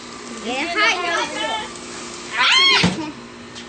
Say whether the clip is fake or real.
real